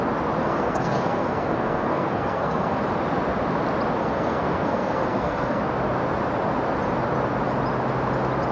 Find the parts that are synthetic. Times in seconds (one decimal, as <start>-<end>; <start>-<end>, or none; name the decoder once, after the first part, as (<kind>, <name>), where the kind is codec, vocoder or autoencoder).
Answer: 0.4-2.8 (codec, SNAC); 4.0-5.6